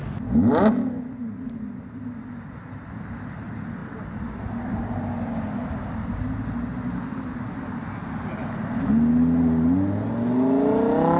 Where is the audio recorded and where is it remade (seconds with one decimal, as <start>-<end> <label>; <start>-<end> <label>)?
0.0-11.2 recorded